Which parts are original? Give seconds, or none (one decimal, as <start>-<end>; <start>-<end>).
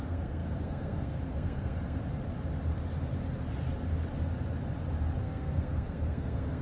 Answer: 2.0-5.2